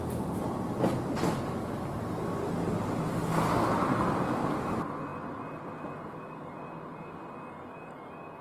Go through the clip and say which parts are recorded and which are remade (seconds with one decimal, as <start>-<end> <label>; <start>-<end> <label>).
0.0-8.4 recorded